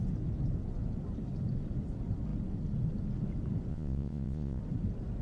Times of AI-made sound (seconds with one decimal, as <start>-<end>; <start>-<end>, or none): 3.7-4.6